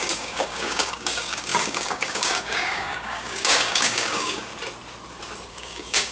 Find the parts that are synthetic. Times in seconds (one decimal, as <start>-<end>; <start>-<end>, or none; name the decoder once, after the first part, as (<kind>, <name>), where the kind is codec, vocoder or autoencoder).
0.0-4.5 (codec, DAC); 5.5-6.1